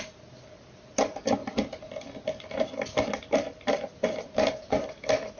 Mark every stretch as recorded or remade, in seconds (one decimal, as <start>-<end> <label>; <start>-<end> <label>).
0.0-5.4 recorded